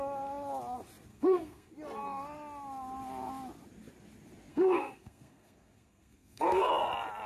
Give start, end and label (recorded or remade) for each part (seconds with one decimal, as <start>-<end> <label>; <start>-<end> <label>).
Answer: 0.0-1.1 recorded; 1.1-1.7 remade; 1.7-4.5 recorded; 4.5-6.7 remade; 6.7-7.3 recorded